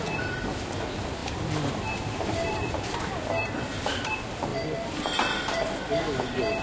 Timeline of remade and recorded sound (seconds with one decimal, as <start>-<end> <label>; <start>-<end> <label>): 0.0-1.2 recorded; 1.2-2.7 remade; 2.7-4.5 recorded; 4.5-5.7 remade; 5.7-6.6 recorded